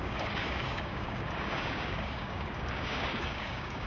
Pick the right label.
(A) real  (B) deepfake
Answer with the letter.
B